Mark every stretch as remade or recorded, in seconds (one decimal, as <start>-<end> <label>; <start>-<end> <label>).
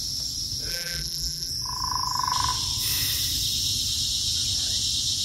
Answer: 0.0-0.7 recorded; 0.7-1.5 remade; 1.5-5.2 recorded